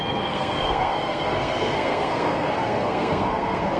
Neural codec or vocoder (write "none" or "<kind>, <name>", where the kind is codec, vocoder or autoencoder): codec, SNAC